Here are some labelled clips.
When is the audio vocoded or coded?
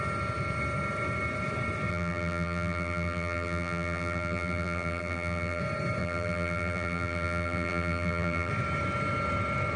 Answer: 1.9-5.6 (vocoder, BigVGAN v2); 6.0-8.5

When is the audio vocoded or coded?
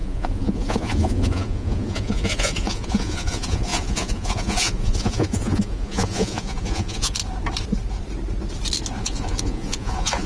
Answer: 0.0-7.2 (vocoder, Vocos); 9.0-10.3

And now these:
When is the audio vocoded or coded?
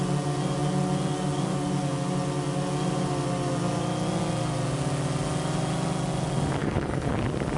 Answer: 6.6-7.1 (codec, HILCodec)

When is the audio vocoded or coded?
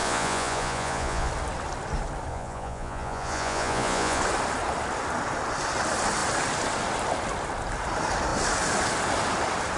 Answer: 0.0-1.3 (vocoder, Vocos); 2.3-4.2